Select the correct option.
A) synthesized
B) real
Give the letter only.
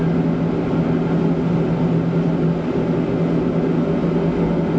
B